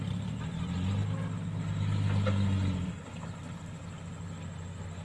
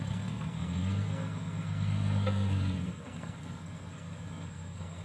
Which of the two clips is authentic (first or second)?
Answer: first